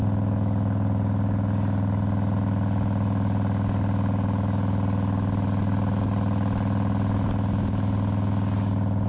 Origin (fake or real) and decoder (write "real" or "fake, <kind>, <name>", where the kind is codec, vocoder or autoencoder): real